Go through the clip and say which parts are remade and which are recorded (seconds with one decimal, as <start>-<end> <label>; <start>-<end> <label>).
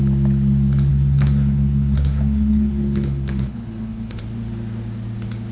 0.0-0.9 recorded; 0.9-4.2 remade; 4.2-5.5 recorded